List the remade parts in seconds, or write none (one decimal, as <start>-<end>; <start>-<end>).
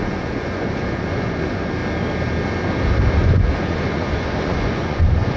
0.0-1.8; 3.1-5.4